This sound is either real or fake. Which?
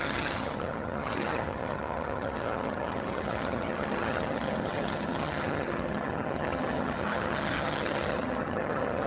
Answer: fake